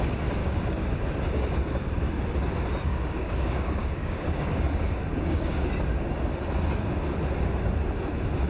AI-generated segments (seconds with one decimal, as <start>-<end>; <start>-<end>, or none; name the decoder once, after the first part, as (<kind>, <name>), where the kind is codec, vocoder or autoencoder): 0.4-0.9 (codec, DAC); 2.9-5.7